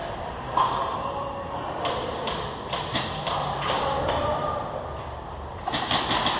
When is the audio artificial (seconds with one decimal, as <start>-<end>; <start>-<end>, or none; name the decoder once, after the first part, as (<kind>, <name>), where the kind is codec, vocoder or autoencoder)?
0.0-6.4 (vocoder, BigVGAN v2)